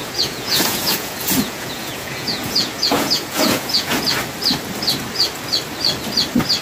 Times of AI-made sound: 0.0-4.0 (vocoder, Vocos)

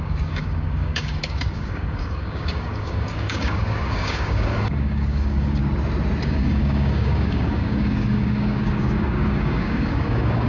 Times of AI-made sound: 0.0-5.6 (codec, DAC); 6.2-10.5